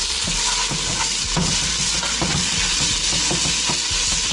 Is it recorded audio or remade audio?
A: recorded